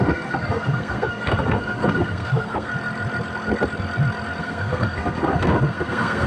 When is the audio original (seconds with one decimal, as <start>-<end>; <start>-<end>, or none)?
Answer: 2.7-4.4